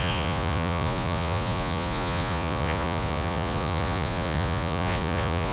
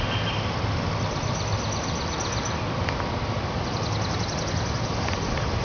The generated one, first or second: first